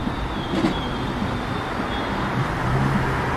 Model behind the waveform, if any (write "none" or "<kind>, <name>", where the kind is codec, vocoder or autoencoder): none